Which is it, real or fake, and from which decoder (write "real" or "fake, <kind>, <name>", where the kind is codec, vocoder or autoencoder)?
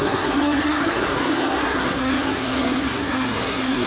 fake, codec, SNAC